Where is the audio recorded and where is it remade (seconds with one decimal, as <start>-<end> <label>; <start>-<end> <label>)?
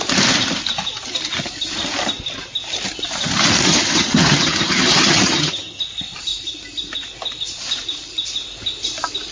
0.0-3.7 recorded; 3.7-5.8 remade; 5.8-9.3 recorded